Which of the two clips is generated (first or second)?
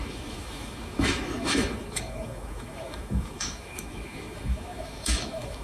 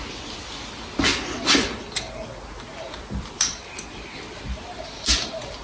first